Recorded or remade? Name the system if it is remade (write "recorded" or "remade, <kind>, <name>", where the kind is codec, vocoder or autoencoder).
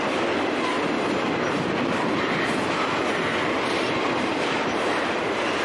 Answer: recorded